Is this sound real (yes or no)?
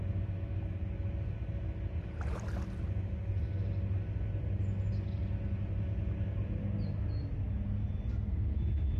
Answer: yes